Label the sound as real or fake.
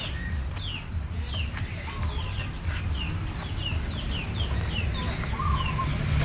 real